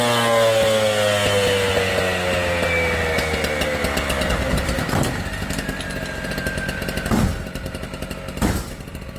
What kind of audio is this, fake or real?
real